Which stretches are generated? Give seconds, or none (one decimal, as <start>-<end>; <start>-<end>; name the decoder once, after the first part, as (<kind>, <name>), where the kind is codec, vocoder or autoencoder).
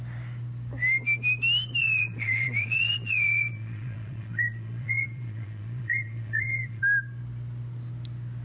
1.8-6.8 (vocoder, Vocos)